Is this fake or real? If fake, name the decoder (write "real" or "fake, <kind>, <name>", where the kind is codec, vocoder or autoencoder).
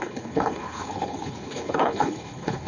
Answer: fake, codec, HILCodec